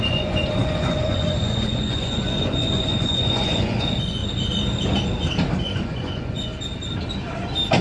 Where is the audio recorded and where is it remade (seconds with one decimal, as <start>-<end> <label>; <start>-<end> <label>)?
0.0-4.2 remade; 4.2-5.6 recorded; 5.6-6.5 remade; 6.5-7.8 recorded